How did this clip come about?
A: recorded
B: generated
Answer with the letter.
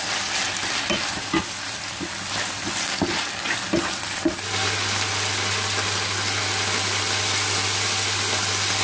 A